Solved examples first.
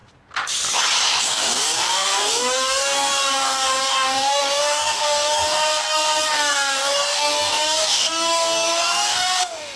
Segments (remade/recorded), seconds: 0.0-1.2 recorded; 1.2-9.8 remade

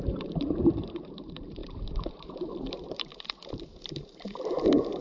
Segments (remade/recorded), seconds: 0.0-5.0 remade

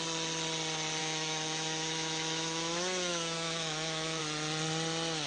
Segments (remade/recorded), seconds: 0.0-1.0 recorded; 1.0-4.2 remade; 4.2-5.3 recorded

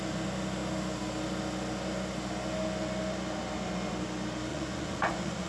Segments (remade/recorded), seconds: 0.0-4.5 recorded; 4.5-5.5 remade

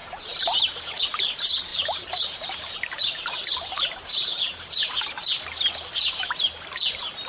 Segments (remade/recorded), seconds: 0.0-1.0 remade; 1.0-1.7 recorded; 1.7-4.9 remade; 4.9-7.3 recorded

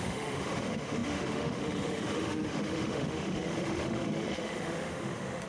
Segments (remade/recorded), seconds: 0.0-5.5 remade